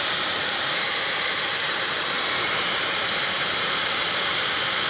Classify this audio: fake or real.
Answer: fake